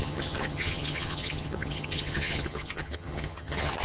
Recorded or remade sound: remade